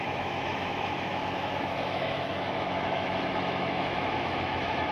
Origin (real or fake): fake